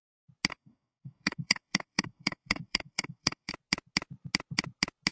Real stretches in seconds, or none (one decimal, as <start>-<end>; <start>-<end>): 0.0-0.5; 3.5-5.1